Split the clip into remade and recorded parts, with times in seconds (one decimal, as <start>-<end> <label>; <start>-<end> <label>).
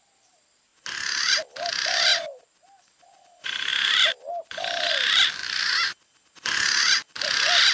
0.0-0.7 remade; 0.7-1.7 recorded; 1.7-2.1 remade; 2.1-2.8 recorded; 2.8-5.4 remade; 5.4-7.2 recorded; 7.2-7.7 remade